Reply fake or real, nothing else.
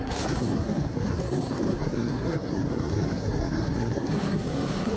fake